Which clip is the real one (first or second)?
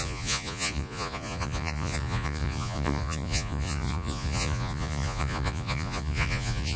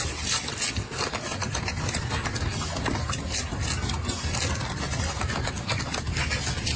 second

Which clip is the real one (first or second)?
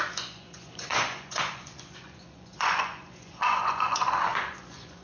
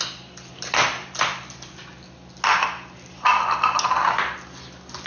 second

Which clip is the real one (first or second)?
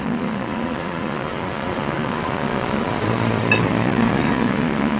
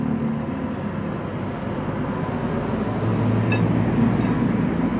second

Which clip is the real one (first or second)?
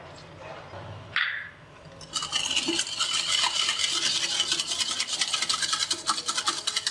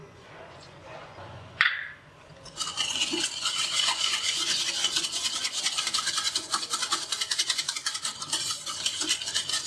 first